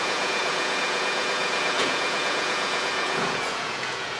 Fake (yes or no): yes